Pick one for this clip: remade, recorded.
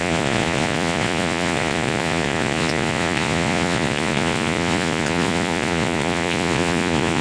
remade